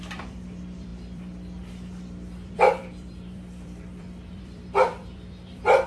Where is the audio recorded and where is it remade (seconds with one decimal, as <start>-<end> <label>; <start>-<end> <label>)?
0.0-5.9 remade